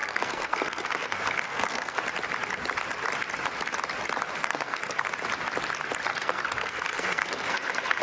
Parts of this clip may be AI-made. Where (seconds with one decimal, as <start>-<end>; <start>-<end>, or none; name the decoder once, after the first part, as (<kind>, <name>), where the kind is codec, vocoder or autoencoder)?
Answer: 0.0-2.0 (codec, SNAC); 4.4-5.1; 6.1-8.0